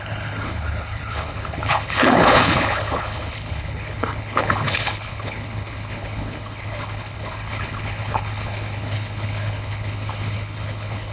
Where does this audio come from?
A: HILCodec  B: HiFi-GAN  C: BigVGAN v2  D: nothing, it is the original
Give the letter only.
A